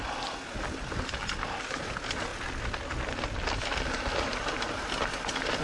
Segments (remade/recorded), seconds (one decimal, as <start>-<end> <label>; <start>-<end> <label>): 0.0-5.6 recorded